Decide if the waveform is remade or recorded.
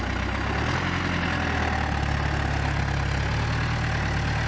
recorded